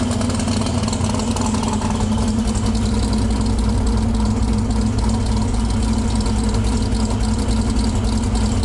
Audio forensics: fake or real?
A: real